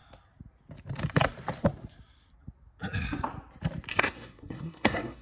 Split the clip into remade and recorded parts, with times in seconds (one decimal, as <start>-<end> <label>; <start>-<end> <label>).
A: 0.0-3.9 recorded; 3.9-5.2 remade